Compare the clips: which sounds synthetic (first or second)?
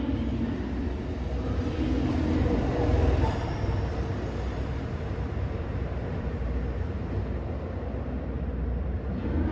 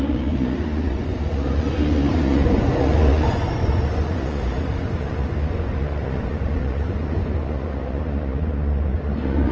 second